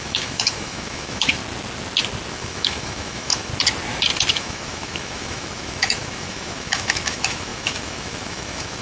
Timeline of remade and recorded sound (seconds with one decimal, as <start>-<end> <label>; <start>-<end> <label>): 0.0-1.4 remade; 1.4-2.3 recorded; 2.3-3.5 remade; 3.5-4.3 recorded; 4.3-8.8 remade